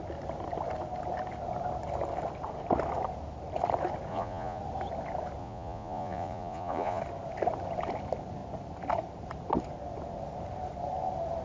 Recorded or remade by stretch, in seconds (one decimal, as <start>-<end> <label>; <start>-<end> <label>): 0.0-4.1 recorded; 4.1-4.6 remade; 4.6-5.4 recorded; 5.4-7.0 remade; 7.0-11.4 recorded